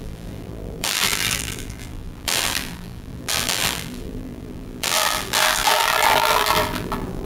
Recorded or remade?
remade